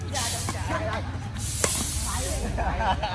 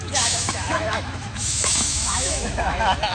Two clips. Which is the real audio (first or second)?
first